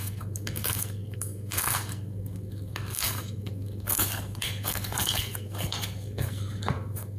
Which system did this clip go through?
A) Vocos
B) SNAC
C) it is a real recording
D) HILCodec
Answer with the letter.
B